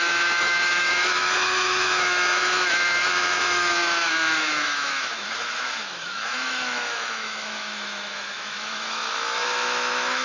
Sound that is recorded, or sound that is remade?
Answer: remade